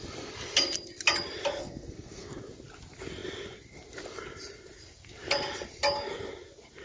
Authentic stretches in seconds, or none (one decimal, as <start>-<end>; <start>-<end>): 0.0-1.6; 2.4-6.8